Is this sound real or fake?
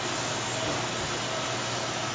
real